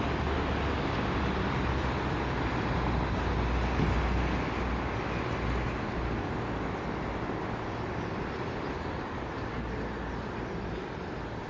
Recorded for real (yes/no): yes